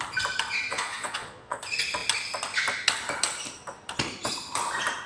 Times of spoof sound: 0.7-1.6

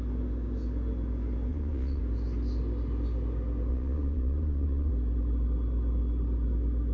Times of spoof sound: 1.5-2.0; 3.7-4.9

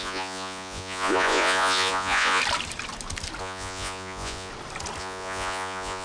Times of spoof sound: 0.0-2.4; 3.4-4.5; 5.0-6.0